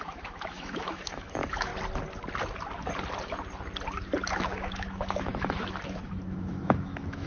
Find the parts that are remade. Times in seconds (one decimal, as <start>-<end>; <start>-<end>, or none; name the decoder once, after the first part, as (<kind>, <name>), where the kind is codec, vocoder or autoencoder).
0.0-1.7 (autoencoder, DAC-VAE); 4.3-7.3